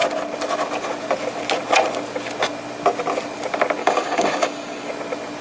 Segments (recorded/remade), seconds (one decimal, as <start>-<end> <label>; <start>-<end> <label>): 0.0-3.8 recorded; 3.8-4.9 remade; 4.9-5.4 recorded

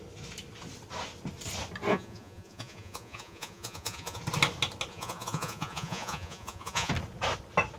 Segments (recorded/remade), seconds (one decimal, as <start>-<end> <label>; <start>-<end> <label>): 0.0-1.9 recorded; 1.9-4.2 remade; 4.2-4.9 recorded; 4.9-6.9 remade; 6.9-7.8 recorded

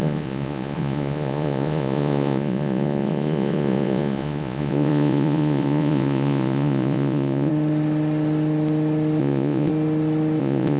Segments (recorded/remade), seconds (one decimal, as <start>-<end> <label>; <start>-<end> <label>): 0.0-7.5 remade; 7.5-9.2 recorded; 9.2-9.7 remade; 9.7-10.4 recorded; 10.4-10.8 remade

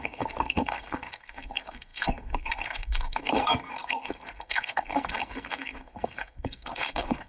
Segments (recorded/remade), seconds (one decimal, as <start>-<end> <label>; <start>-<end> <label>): 0.0-7.3 remade

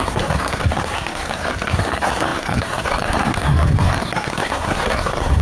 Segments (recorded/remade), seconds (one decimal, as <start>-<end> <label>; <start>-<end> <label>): 0.0-5.4 remade

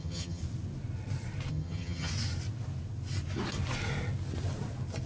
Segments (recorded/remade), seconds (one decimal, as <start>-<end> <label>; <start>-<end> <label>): 0.0-0.4 remade; 0.4-1.5 recorded; 1.5-2.1 remade; 2.1-5.1 recorded